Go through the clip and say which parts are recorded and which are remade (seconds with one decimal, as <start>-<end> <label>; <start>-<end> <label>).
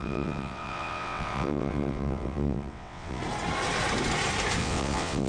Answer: 0.0-3.2 remade; 3.2-4.6 recorded; 4.6-5.3 remade